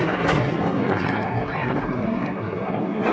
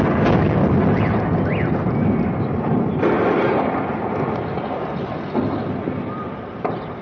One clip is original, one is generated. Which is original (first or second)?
second